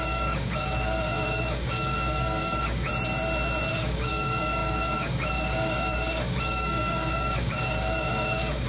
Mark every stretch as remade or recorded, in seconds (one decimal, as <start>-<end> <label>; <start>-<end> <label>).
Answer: 0.0-2.9 remade; 2.9-3.7 recorded; 3.7-8.7 remade